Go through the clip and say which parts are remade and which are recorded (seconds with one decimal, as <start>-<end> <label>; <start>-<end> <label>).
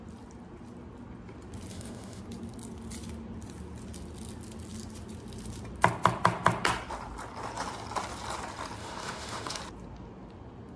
0.0-1.7 recorded; 1.7-2.2 remade; 2.2-8.8 recorded; 8.8-9.6 remade; 9.6-10.8 recorded